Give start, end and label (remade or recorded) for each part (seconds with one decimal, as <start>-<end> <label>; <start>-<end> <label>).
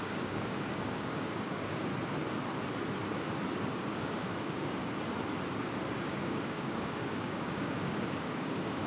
0.0-1.9 remade; 1.9-3.7 recorded; 3.7-4.8 remade; 4.8-5.9 recorded; 5.9-8.9 remade